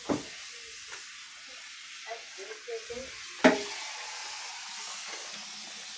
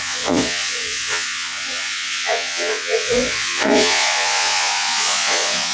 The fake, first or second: second